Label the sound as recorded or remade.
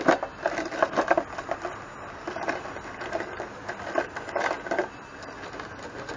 recorded